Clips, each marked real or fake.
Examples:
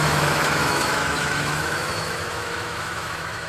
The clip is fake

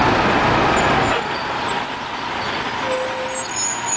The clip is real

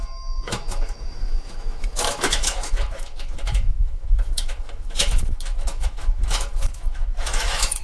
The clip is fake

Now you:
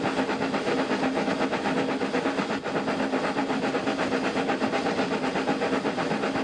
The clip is real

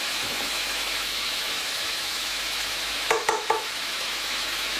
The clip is fake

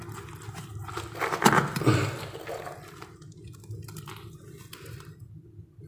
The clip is real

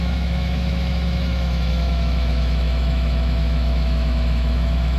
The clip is fake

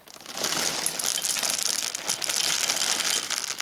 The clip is real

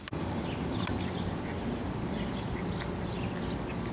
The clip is real